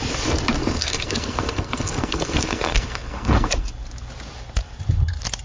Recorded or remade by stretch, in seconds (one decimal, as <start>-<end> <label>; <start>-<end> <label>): 0.0-0.6 recorded; 0.6-3.7 remade; 3.7-5.4 recorded